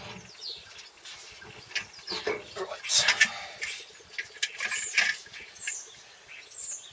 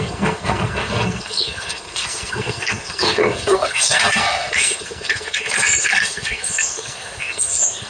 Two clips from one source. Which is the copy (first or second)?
second